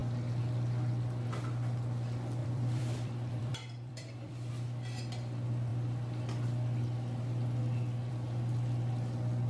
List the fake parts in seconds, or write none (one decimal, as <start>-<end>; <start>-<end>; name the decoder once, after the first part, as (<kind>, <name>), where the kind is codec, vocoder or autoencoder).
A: 2.4-4.5 (vocoder, BigVGAN v2)